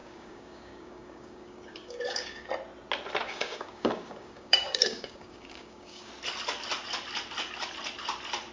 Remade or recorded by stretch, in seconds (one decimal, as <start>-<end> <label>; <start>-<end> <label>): 0.0-2.5 remade; 2.5-3.2 recorded; 3.2-6.1 remade; 6.1-8.5 recorded